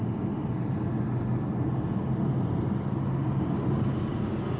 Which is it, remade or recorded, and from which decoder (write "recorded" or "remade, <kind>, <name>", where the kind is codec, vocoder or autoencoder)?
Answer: recorded